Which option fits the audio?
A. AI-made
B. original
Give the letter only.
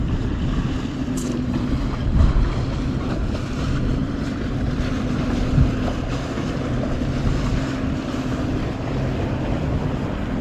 B